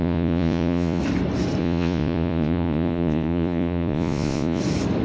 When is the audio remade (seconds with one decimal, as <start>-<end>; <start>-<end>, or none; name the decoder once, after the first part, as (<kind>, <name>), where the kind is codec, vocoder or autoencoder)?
0.0-1.0 (vocoder, Vocos); 1.6-4.6

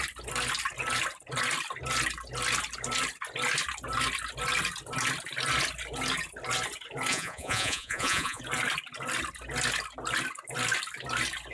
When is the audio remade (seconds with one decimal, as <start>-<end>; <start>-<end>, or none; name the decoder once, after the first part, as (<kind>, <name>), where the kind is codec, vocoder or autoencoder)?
7.1-8.4 (vocoder, Vocos)

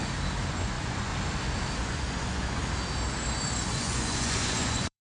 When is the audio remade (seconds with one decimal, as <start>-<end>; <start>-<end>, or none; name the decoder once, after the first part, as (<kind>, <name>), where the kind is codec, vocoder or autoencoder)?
0.5-1.1 (vocoder, Vocos); 1.8-2.6; 3.7-5.0

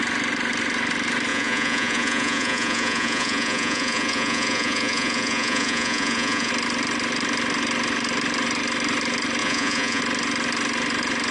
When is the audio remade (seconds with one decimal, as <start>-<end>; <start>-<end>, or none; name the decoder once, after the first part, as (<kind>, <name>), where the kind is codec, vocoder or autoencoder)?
1.3-6.5 (vocoder, Vocos); 9.4-10.0

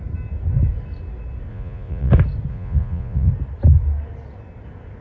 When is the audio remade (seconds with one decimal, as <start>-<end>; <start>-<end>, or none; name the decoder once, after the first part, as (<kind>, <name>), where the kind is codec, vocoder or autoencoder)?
1.5-2.1 (vocoder, Vocos); 2.5-3.3

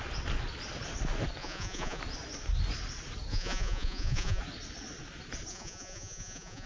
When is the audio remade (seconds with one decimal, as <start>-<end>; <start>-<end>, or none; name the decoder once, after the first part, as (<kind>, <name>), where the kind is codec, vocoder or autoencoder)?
1.4-2.0 (vocoder, Vocos); 3.3-4.4; 5.5-6.7

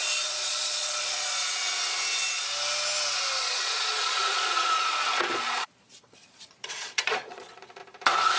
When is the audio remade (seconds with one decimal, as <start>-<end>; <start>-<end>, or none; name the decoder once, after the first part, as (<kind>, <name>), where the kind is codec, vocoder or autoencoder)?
0.0-1.4 (vocoder, Vocos); 3.4-7.8